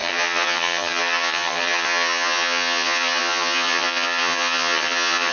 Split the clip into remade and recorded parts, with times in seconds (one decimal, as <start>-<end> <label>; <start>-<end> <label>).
0.0-5.3 remade